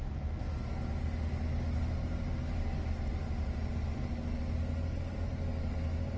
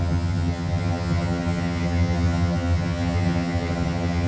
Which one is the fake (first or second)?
second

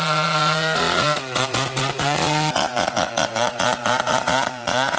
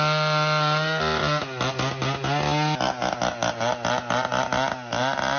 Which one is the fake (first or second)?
first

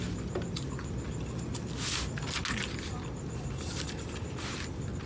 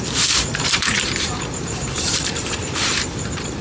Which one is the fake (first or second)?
second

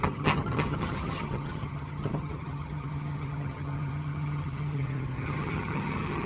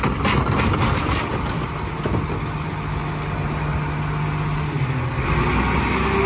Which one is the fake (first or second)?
first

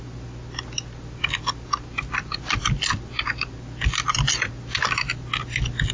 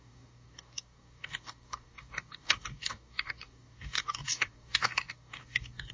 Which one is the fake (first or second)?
second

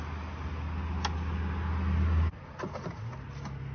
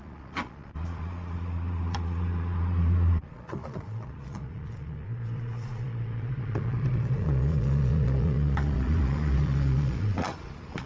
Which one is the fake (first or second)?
second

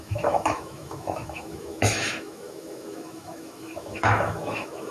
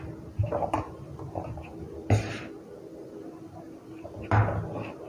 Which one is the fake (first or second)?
first